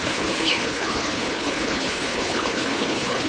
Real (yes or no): no